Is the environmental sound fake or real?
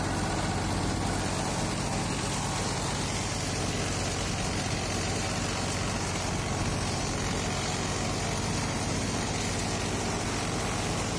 real